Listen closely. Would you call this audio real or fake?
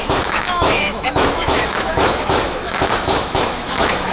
fake